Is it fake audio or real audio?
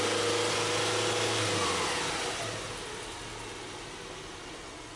real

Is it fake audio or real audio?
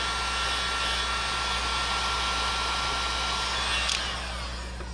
real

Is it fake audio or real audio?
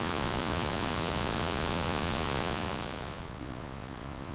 fake